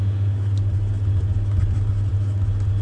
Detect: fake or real real